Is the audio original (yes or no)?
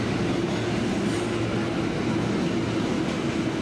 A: yes